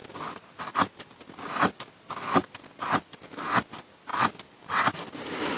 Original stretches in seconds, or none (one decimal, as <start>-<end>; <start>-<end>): 0.0-5.6